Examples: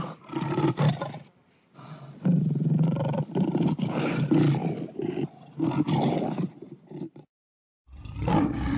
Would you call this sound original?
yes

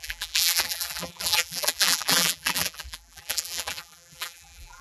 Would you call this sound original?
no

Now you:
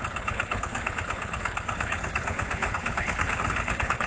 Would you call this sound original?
no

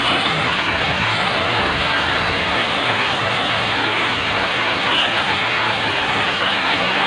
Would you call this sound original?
no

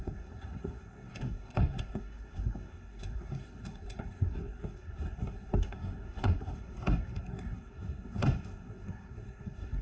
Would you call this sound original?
no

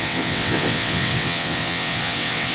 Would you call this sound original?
no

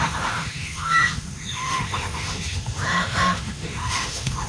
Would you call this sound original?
no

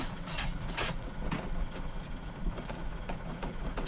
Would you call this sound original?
no